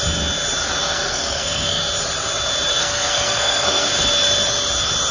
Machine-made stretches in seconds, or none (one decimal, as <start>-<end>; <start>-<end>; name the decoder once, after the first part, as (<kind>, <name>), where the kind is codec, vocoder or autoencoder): 0.8-1.8 (codec, SNAC); 2.7-3.9